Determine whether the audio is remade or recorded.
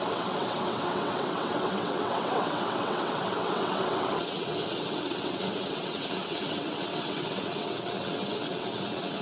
remade